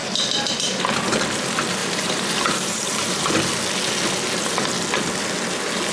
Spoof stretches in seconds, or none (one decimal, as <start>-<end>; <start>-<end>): 1.8-3.3